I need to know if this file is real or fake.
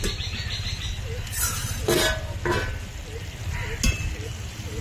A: real